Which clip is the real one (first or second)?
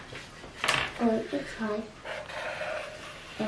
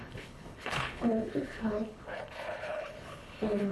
first